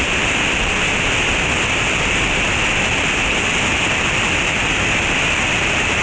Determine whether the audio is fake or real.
fake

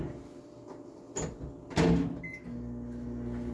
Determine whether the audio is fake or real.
real